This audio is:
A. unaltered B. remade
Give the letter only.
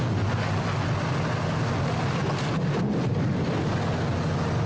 A